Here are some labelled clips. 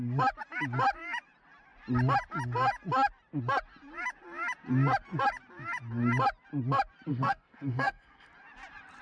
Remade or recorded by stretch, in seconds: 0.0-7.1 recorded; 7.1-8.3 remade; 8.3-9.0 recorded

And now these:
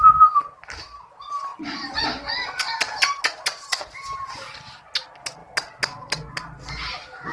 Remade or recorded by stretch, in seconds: 0.0-1.5 recorded; 1.5-2.3 remade; 2.3-7.3 recorded